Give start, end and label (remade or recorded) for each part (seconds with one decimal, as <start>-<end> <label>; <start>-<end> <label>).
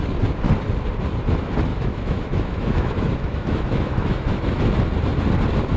0.0-1.7 recorded; 1.7-4.6 remade; 4.6-5.8 recorded